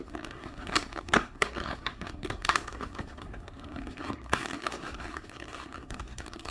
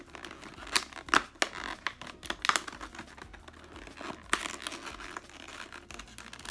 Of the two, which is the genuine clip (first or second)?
second